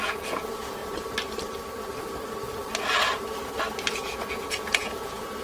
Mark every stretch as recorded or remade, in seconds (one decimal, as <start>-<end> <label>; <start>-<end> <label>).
0.0-0.8 remade; 0.8-4.0 recorded; 4.0-5.4 remade